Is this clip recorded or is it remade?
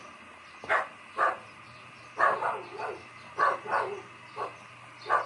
recorded